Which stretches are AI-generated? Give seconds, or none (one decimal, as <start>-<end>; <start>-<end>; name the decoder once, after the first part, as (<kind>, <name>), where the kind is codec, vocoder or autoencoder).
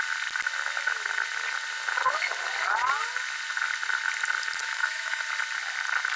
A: 4.6-5.2 (autoencoder, DAC-VAE)